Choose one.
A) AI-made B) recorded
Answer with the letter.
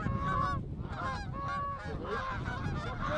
B